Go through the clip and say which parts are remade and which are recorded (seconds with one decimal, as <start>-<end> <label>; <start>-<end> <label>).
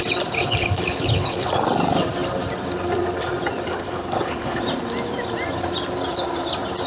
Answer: 0.0-0.4 recorded; 0.4-1.5 remade; 1.5-3.7 recorded; 3.7-4.6 remade; 4.6-6.9 recorded